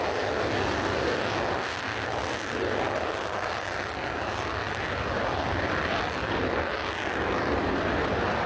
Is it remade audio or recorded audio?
recorded